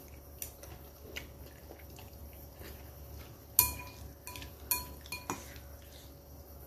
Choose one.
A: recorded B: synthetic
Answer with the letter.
A